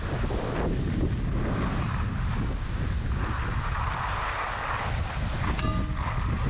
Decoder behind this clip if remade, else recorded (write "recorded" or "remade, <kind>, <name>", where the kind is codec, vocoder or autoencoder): recorded